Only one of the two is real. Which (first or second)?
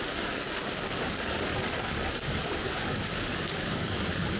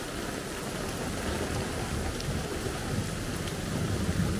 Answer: second